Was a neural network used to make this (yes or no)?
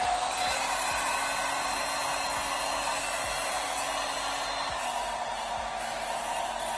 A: no